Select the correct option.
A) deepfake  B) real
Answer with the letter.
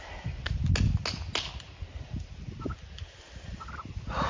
B